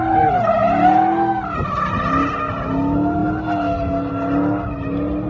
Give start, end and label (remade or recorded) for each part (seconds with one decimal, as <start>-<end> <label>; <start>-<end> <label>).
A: 0.0-5.3 recorded